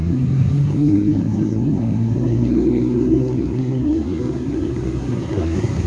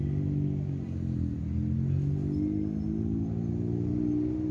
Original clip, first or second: second